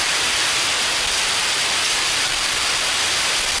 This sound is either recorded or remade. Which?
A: recorded